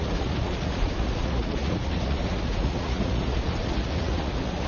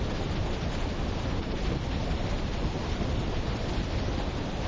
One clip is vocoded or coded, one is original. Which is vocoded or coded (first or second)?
first